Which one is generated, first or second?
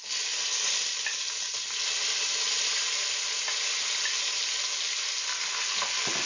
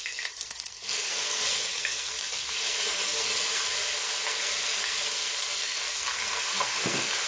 second